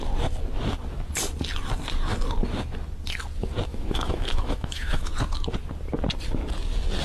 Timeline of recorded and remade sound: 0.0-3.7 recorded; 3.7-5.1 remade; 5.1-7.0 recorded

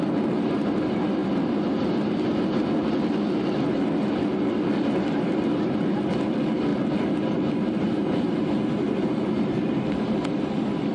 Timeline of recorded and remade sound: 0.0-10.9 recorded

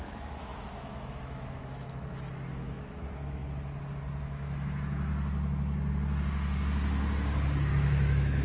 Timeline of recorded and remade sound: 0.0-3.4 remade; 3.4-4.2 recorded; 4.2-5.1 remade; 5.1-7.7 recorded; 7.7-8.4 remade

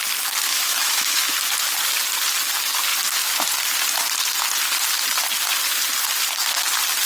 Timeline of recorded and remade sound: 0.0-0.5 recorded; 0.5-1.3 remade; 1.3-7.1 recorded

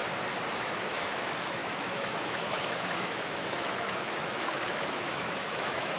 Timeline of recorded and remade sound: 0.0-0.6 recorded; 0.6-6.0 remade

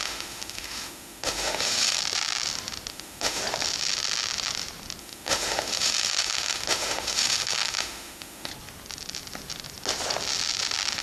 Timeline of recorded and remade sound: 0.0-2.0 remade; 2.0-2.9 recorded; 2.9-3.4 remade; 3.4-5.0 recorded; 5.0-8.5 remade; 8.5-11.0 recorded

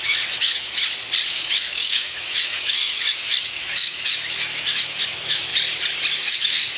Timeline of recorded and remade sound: 0.0-0.8 remade; 0.8-1.3 recorded; 1.3-5.5 remade; 5.5-6.1 recorded; 6.1-6.8 remade

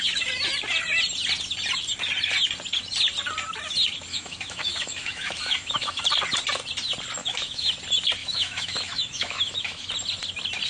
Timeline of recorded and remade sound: 0.0-4.1 recorded; 4.1-6.0 remade; 6.0-7.2 recorded; 7.2-7.7 remade; 7.7-8.2 recorded; 8.2-9.9 remade; 9.9-10.7 recorded